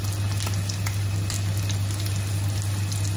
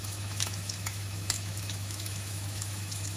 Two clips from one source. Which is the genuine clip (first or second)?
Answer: first